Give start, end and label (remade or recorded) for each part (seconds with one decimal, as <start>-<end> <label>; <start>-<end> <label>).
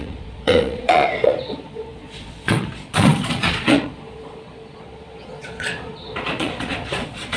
0.0-7.4 remade